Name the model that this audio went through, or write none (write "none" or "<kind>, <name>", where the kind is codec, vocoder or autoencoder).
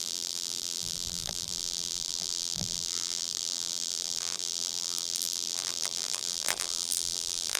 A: vocoder, BigVGAN v2